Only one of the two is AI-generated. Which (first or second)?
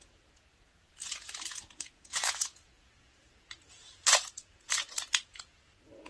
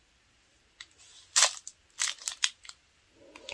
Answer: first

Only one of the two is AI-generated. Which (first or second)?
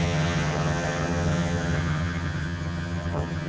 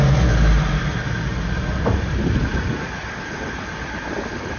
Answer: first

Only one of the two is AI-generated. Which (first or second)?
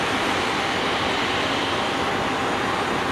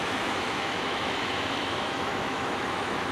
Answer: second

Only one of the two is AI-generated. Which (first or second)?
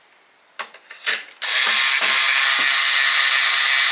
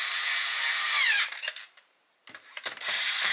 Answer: second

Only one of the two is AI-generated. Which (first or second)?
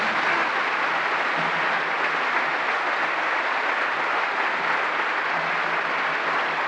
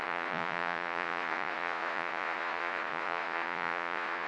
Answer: second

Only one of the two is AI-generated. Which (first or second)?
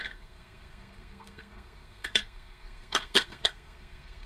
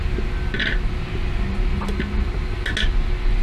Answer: first